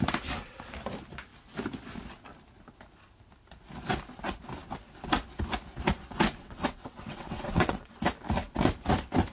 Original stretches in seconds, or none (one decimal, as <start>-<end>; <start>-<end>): 0.0-6.4; 8.0-9.3